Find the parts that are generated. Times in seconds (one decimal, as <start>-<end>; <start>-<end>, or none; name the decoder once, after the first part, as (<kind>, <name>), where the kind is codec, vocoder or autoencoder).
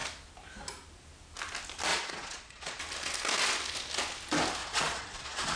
1.9-2.8 (vocoder, Vocos); 4.6-5.6